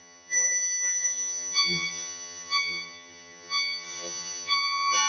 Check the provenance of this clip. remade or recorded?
remade